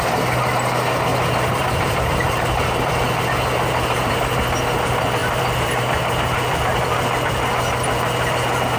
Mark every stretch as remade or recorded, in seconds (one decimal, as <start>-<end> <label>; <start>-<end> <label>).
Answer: 0.0-1.1 recorded; 1.1-3.2 remade; 3.2-5.2 recorded; 5.2-5.8 remade; 5.8-6.5 recorded; 6.5-7.0 remade; 7.0-8.8 recorded